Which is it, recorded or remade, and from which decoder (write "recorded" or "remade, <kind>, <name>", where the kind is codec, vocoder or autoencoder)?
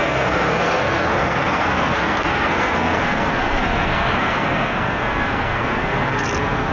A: remade, codec, SNAC